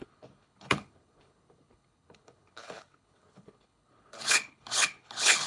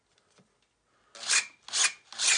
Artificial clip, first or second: first